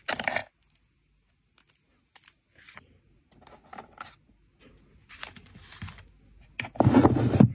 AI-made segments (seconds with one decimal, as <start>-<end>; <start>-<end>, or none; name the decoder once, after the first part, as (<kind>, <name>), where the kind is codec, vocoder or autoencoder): none